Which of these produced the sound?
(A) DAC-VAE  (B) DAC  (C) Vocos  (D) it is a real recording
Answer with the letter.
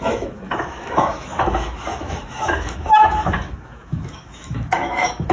A